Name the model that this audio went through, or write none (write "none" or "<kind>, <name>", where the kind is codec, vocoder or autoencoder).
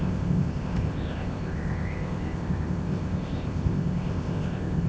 codec, ZipCodec